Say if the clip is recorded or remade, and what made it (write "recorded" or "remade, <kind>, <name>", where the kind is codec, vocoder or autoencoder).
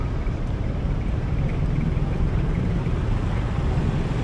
remade, vocoder, BigVGAN v2